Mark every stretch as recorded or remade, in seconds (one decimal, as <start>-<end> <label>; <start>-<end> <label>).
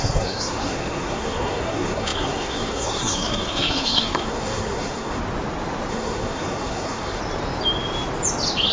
0.0-5.2 remade; 5.2-5.9 recorded; 5.9-7.2 remade; 7.2-8.7 recorded